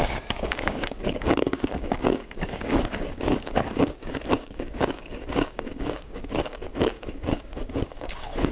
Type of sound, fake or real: fake